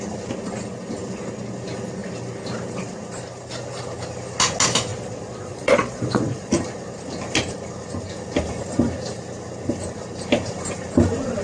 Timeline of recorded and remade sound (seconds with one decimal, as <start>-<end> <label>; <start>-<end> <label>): 0.0-4.9 recorded; 4.9-6.5 remade; 6.5-11.4 recorded